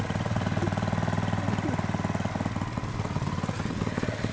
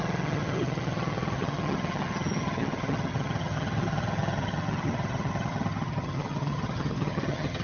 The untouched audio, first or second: first